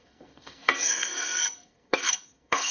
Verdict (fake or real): fake